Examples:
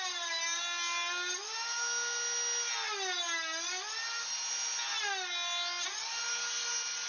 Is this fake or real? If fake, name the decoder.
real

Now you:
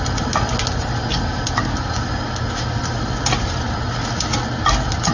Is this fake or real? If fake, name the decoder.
real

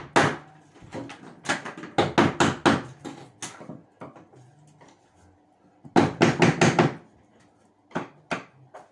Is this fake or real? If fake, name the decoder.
real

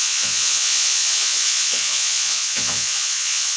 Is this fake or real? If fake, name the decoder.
fake, vocoder, Vocos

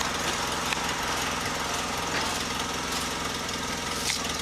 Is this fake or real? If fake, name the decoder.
real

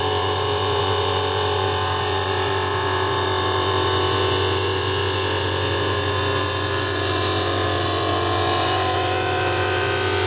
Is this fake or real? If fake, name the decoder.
fake, vocoder, Vocos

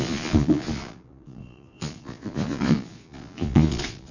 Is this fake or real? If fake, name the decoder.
fake, vocoder, Vocos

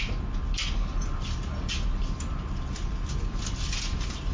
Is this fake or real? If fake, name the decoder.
real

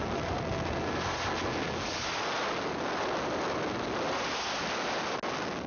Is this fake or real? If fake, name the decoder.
real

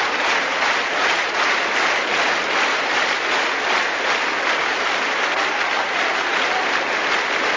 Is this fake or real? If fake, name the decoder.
real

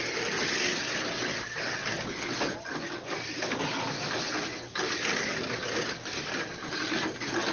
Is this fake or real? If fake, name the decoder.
real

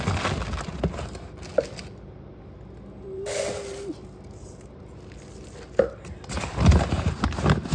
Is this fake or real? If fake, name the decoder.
real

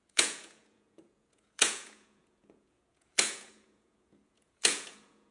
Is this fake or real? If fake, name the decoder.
fake, vocoder, Vocos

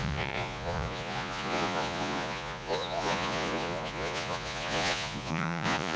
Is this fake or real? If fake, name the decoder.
fake, vocoder, Vocos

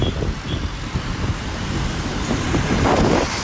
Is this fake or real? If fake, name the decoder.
real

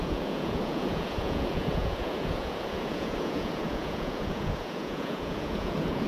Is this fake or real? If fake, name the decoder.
fake, vocoder, Vocos